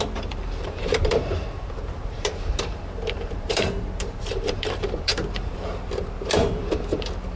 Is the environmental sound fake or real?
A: fake